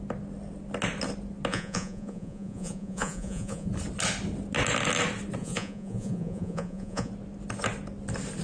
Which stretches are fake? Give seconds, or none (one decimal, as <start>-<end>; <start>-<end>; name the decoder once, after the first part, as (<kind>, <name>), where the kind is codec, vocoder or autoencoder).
1.5-3.7 (vocoder, Vocos); 5.4-7.1